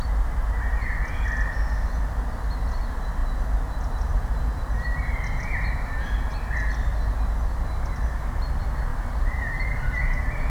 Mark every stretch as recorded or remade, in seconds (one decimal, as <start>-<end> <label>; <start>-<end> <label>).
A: 0.0-8.9 recorded; 8.9-9.9 remade; 9.9-10.5 recorded